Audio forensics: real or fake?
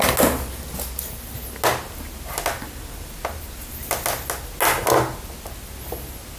real